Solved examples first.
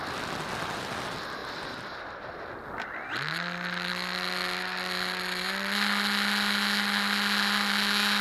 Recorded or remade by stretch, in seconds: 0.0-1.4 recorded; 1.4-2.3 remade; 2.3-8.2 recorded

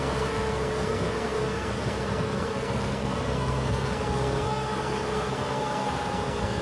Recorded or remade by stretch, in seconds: 0.0-6.6 remade

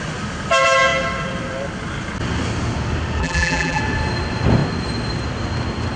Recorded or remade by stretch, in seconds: 0.0-3.2 recorded; 3.2-3.8 remade; 3.8-6.0 recorded